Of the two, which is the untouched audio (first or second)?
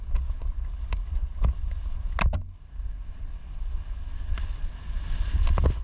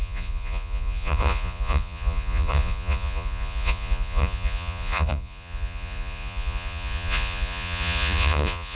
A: first